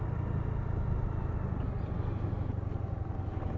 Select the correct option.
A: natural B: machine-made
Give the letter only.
A